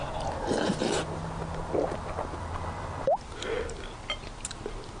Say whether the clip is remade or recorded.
recorded